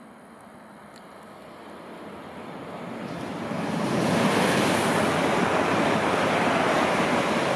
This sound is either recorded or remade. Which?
recorded